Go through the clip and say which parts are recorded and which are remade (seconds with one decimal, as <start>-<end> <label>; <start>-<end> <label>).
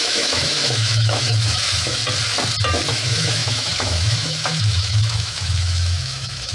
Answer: 0.0-2.0 remade; 2.0-2.9 recorded; 2.9-6.5 remade